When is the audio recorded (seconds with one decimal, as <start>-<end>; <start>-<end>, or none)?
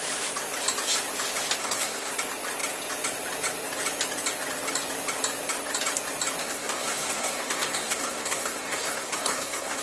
0.0-1.6; 2.1-6.4